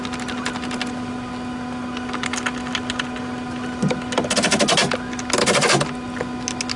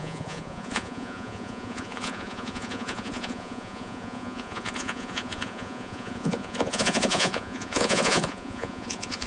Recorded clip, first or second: first